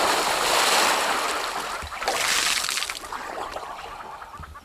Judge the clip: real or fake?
real